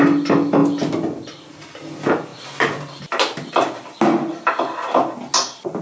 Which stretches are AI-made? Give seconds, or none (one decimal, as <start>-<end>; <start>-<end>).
none